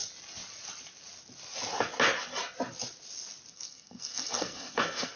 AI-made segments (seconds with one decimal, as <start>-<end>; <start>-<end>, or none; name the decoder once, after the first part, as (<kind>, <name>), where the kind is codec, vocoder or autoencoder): 3.5-5.2 (codec, SNAC)